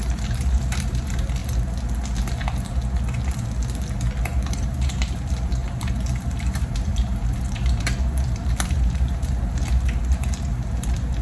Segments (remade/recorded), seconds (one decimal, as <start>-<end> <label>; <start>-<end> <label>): 0.0-1.4 remade; 1.4-4.5 recorded; 4.5-11.2 remade